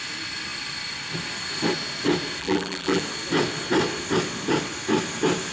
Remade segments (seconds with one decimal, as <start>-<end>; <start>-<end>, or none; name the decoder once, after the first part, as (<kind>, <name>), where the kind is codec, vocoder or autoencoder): 2.4-3.0 (vocoder, BigVGAN v2)